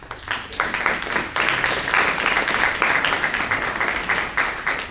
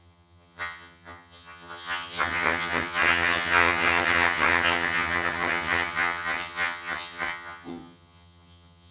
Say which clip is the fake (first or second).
second